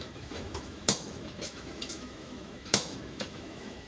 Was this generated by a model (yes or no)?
yes